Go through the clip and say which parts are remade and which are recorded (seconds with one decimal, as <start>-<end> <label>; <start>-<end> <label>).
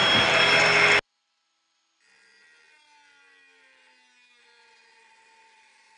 0.0-6.0 recorded